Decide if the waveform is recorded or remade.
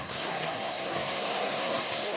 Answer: remade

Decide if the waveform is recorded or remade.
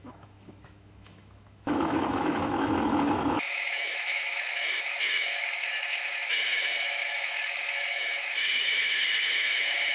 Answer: remade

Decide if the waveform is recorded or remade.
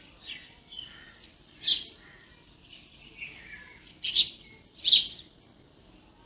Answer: recorded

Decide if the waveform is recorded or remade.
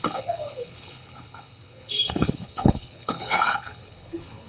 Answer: remade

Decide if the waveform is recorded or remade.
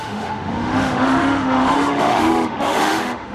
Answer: remade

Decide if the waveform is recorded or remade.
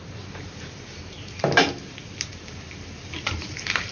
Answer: remade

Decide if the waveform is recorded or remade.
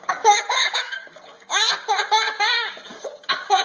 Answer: remade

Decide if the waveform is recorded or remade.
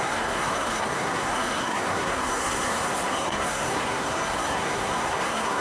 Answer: remade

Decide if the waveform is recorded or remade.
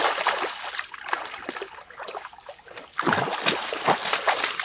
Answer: recorded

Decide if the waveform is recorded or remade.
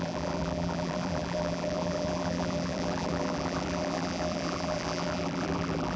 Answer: remade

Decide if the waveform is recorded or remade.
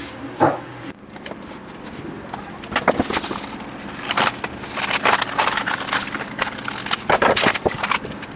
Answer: recorded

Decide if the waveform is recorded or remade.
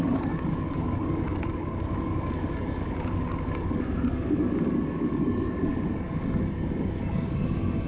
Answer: remade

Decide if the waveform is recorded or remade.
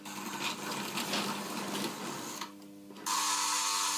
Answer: recorded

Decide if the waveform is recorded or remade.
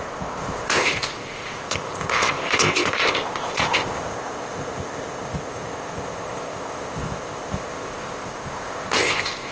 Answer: remade